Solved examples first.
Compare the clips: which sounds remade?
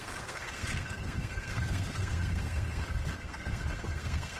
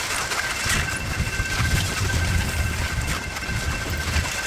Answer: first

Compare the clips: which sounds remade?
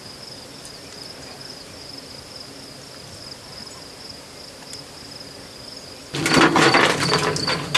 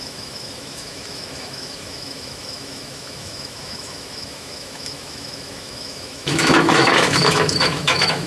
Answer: second